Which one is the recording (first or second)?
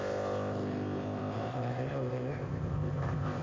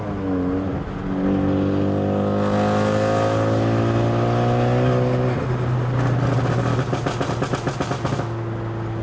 second